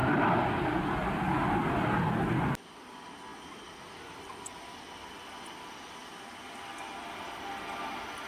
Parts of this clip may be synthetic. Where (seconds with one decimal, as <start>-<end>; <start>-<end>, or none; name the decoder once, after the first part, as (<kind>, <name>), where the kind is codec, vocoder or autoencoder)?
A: none